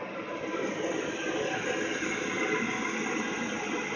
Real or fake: real